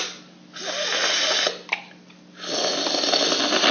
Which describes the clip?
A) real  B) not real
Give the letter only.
A